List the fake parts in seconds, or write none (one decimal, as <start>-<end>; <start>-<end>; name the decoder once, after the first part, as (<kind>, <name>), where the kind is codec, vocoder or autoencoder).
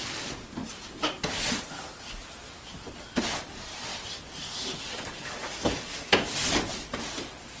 0.6-1.6 (vocoder, BigVGAN v2); 3.9-5.9